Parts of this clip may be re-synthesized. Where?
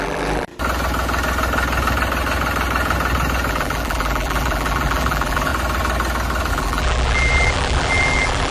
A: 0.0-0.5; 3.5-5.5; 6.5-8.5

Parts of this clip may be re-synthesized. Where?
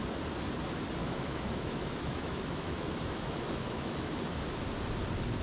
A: 1.0-4.2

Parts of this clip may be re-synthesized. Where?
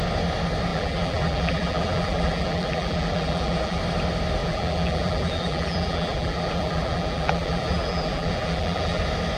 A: 0.7-3.8; 4.4-9.0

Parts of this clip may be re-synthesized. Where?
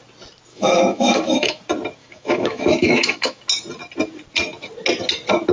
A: 0.5-1.6; 2.0-3.4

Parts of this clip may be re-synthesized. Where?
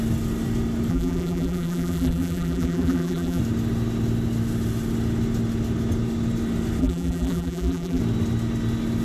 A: 0.9-3.4; 6.8-8.0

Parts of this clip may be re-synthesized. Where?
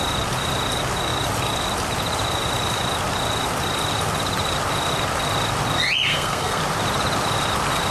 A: 6.1-6.6